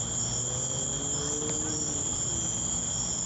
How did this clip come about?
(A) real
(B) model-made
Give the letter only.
A